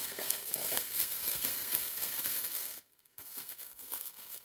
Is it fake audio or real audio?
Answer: fake